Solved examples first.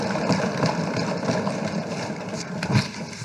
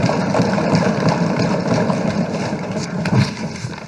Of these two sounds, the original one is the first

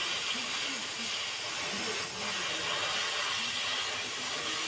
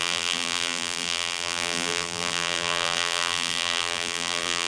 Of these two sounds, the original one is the first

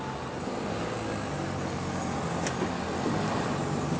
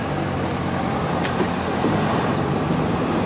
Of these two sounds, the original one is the first